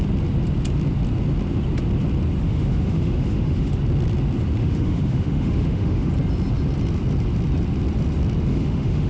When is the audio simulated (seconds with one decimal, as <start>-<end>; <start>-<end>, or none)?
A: 2.4-3.7; 4.6-6.1; 8.5-9.1

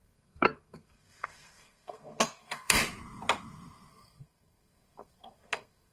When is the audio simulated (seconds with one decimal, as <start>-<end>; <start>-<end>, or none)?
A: 0.0-2.8; 3.9-5.9

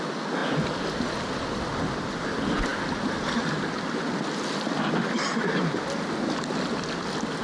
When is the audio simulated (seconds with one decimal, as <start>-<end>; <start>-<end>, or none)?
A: none

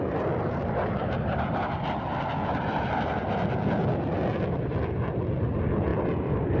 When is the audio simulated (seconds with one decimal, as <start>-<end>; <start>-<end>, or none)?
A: none

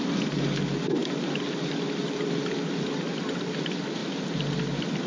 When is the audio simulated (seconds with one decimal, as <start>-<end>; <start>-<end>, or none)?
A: none

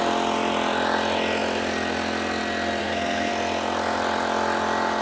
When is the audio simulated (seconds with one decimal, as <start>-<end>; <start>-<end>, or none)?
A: 2.8-3.3